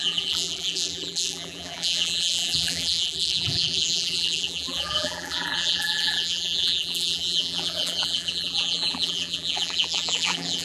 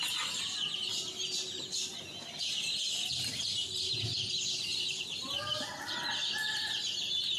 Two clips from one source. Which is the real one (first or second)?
second